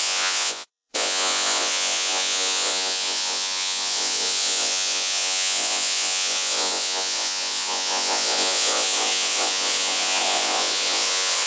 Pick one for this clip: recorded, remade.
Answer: remade